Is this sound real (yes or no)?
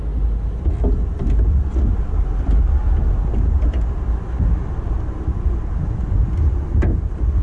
yes